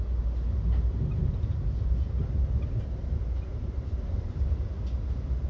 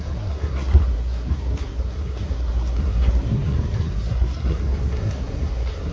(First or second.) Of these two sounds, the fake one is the second